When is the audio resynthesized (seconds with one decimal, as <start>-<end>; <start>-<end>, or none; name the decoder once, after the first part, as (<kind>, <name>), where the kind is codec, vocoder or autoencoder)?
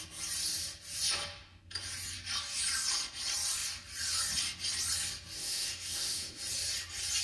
5.4-6.4 (autoencoder, DAC-VAE)